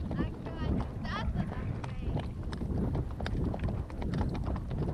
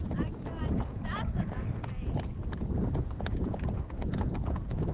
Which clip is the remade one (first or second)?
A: second